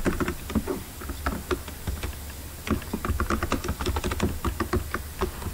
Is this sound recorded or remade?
recorded